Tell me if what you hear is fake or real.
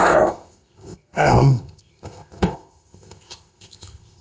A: fake